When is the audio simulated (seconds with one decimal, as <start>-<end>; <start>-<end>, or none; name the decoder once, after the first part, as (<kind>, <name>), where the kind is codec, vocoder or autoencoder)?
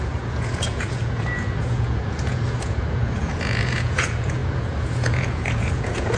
0.0-6.2 (vocoder, Vocos)